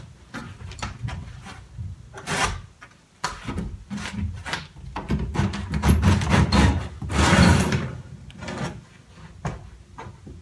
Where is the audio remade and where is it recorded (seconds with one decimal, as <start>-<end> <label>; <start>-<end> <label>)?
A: 0.0-0.4 recorded; 0.4-2.0 remade; 2.0-10.4 recorded